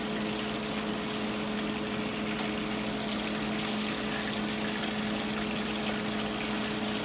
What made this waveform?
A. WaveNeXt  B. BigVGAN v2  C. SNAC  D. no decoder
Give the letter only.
D